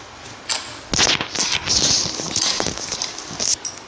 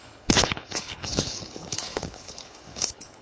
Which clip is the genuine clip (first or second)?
first